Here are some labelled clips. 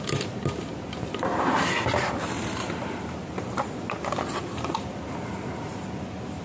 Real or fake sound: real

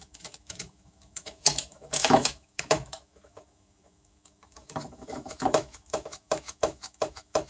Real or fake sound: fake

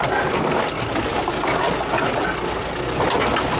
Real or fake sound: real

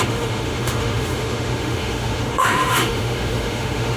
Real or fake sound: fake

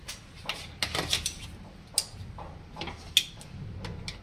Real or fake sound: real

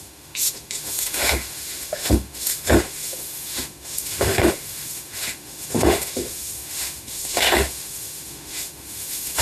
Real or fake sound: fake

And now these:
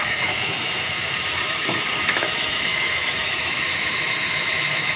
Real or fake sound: fake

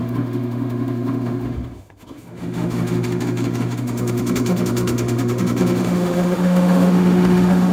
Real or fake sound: fake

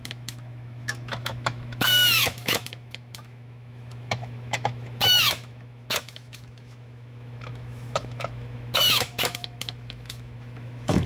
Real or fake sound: fake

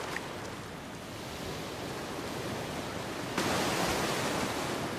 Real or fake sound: real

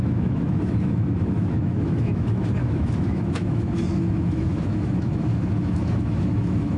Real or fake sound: fake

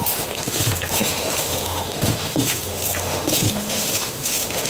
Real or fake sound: fake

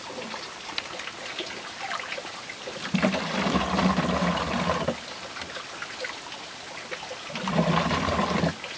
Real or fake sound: real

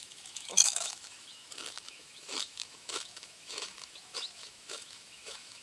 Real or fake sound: fake